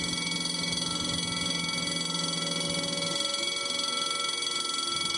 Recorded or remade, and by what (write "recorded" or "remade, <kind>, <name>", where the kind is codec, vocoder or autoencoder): recorded